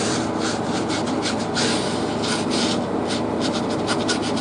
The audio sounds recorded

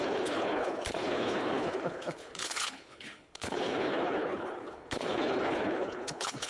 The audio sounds remade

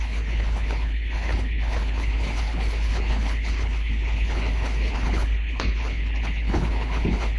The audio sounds remade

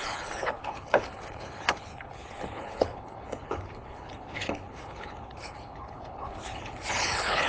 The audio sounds remade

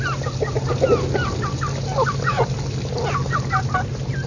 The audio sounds recorded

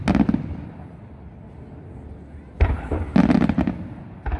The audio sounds recorded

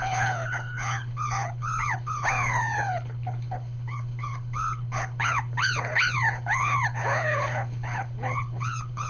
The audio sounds remade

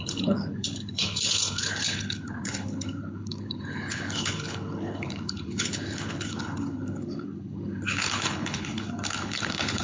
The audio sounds remade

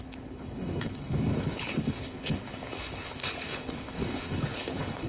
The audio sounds remade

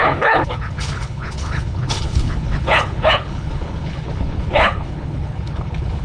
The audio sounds remade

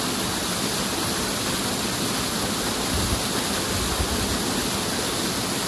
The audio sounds recorded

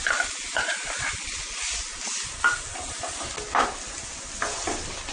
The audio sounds recorded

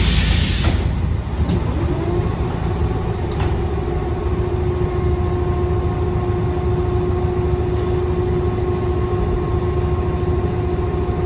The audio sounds recorded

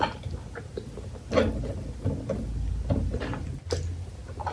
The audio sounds recorded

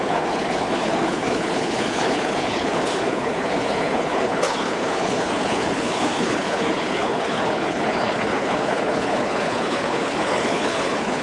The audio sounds remade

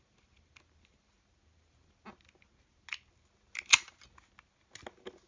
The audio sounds recorded